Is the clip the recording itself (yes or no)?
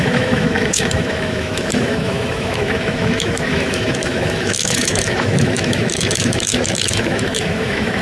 no